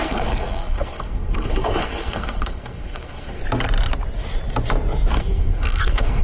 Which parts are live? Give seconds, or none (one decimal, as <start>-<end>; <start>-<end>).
3.4-5.1